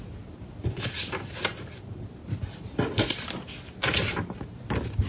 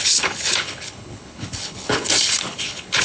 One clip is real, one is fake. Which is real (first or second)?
first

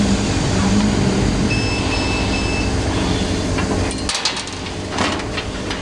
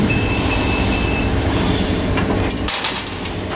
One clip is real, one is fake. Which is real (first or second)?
first